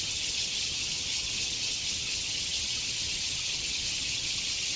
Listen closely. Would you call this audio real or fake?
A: fake